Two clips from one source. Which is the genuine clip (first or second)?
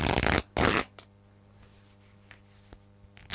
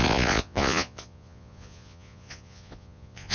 first